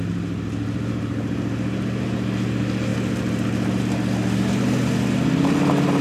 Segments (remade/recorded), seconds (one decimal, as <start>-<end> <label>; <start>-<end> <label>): 0.0-6.0 recorded